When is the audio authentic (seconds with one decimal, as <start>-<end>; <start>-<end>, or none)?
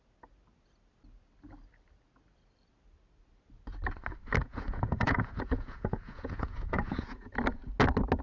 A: 0.0-4.4; 7.3-8.2